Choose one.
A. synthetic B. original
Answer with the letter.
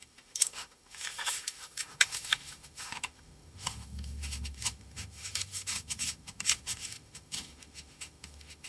A